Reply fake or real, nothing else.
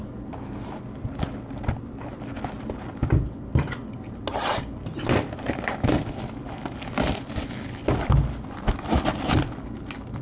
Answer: real